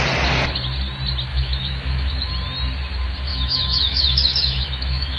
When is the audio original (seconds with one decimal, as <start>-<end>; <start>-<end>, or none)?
0.0-1.3; 2.3-3.3